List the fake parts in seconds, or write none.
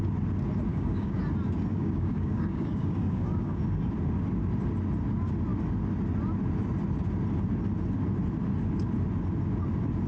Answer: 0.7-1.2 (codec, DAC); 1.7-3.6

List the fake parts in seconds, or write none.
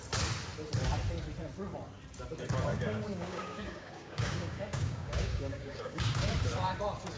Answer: 2.7-6.3 (codec, DAC)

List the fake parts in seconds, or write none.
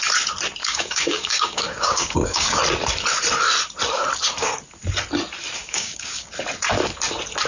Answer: 0.6-2.6 (codec, DAC); 5.6-6.3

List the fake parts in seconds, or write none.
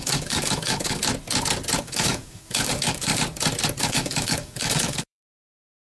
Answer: 0.0-1.0 (codec, DAC); 1.8-3.1; 3.8-5.8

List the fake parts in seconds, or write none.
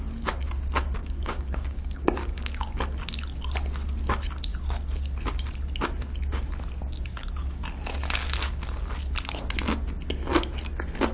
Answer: 1.0-2.8 (codec, DAC)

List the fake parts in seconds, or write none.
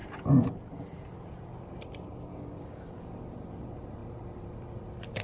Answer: 2.3-2.9 (codec, DAC)